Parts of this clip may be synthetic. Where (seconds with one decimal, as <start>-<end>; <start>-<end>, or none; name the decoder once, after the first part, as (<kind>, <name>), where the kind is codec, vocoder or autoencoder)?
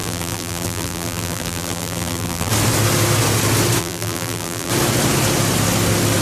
0.0-2.5 (vocoder, BigVGAN v2); 3.8-4.7